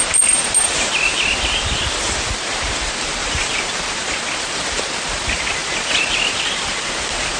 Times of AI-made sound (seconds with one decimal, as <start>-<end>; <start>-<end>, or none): 1.1-4.8; 5.6-6.9